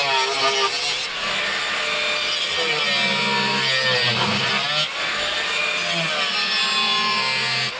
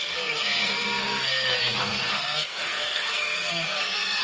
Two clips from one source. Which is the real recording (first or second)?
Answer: first